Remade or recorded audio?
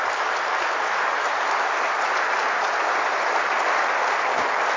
recorded